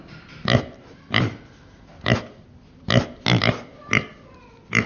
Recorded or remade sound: recorded